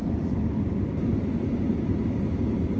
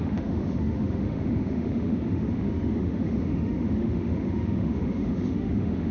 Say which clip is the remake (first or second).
second